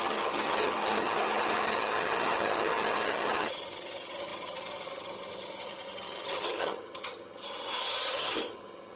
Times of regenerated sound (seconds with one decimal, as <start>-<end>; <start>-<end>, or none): 0.0-9.0